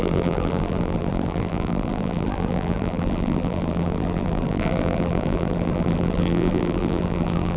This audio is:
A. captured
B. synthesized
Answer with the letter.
B